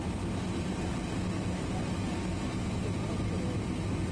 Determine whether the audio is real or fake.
real